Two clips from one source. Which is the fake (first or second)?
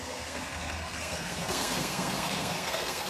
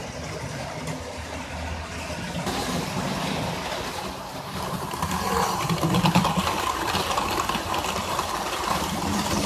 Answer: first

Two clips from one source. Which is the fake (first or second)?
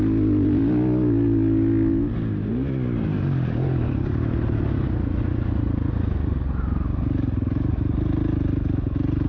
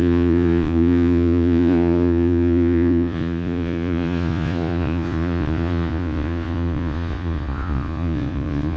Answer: second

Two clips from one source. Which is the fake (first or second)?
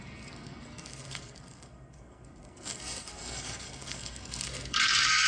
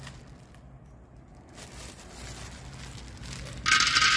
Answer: first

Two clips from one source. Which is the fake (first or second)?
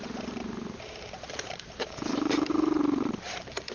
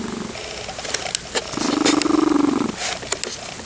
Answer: first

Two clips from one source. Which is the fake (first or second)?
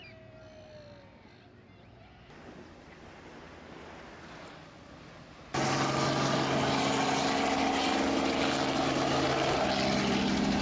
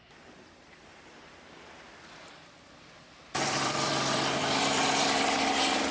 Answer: second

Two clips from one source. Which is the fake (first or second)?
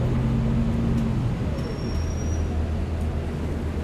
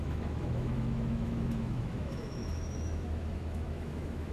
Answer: second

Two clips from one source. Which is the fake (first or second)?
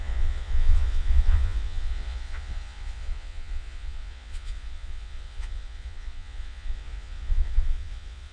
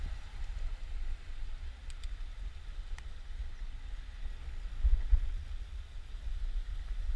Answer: first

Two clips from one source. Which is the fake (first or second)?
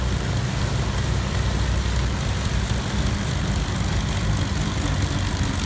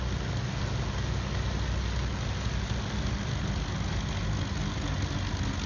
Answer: first